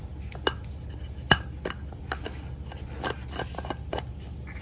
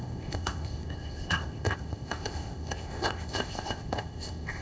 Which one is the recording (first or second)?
first